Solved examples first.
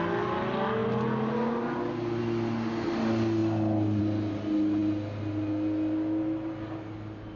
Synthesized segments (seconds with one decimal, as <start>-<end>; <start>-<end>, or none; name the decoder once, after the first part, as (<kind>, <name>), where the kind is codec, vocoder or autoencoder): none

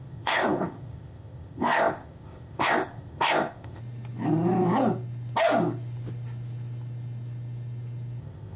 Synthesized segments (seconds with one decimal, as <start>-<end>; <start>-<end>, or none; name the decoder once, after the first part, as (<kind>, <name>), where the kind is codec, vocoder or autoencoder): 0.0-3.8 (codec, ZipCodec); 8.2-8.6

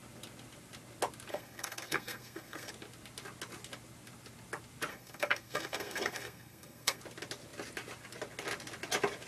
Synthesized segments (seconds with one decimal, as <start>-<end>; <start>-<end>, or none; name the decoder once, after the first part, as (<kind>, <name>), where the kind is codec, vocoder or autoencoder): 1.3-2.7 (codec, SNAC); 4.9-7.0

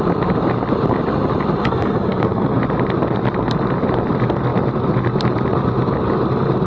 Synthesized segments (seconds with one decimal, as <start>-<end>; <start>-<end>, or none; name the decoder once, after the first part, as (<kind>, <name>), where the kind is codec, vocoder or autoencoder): 1.6-2.6 (codec, SNAC)

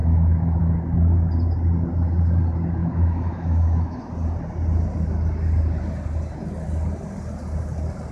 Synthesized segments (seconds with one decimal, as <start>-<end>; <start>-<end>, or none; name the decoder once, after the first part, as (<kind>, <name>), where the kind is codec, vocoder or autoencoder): 0.0-0.6 (autoencoder, DAC-VAE); 2.8-4.1

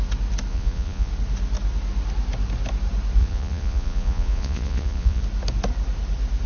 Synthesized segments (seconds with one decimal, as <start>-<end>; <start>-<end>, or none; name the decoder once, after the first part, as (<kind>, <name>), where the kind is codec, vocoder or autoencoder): 0.5-1.1 (vocoder, Vocos); 3.2-5.2

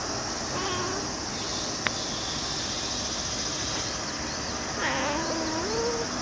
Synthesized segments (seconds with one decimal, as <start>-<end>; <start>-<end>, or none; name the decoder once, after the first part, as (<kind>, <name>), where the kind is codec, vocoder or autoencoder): none